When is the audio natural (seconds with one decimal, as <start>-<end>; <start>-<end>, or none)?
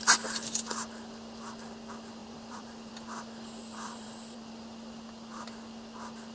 0.0-2.2; 2.9-3.6; 4.4-6.3